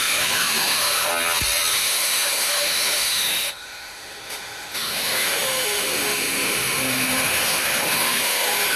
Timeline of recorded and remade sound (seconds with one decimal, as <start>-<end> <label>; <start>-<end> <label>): 0.0-1.1 remade; 1.1-1.7 recorded; 1.7-8.8 remade